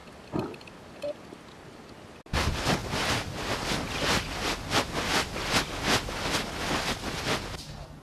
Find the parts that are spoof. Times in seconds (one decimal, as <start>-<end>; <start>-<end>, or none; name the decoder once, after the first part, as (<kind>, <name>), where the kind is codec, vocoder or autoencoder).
none